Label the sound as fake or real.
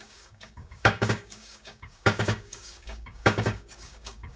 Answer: fake